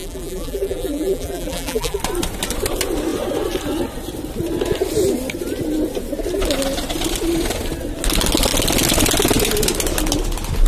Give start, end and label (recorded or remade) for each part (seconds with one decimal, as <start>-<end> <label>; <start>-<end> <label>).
0.0-2.0 remade; 2.0-10.7 recorded